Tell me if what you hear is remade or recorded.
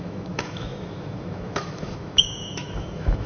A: remade